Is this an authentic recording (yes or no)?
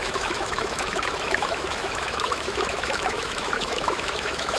no